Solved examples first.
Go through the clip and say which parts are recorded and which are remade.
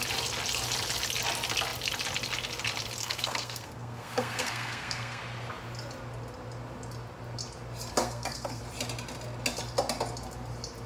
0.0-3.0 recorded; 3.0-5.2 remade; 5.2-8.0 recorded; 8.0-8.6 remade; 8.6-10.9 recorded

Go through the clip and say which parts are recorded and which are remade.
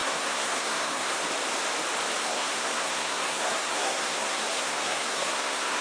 0.0-1.2 remade; 1.2-2.2 recorded; 2.2-5.8 remade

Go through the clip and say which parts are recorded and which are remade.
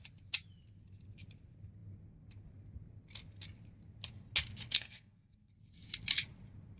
0.0-4.7 recorded; 4.7-5.5 remade; 5.5-6.8 recorded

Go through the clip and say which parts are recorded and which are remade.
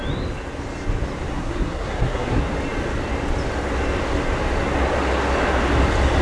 0.0-1.3 recorded; 1.3-2.4 remade; 2.4-6.2 recorded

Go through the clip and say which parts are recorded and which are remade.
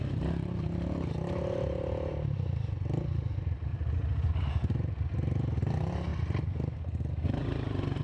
0.0-8.0 recorded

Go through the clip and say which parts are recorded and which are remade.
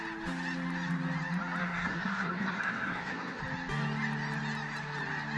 0.0-1.6 recorded; 1.6-3.4 remade; 3.4-5.4 recorded